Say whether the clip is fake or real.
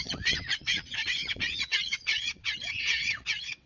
fake